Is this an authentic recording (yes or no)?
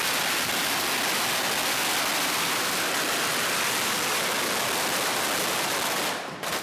yes